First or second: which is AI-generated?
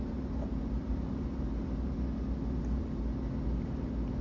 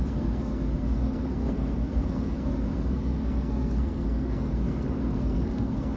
second